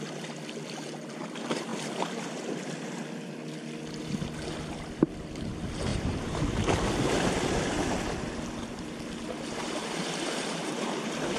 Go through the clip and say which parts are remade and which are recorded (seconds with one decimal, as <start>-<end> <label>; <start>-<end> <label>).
0.0-5.9 recorded; 5.9-6.4 remade; 6.4-9.5 recorded; 9.5-11.4 remade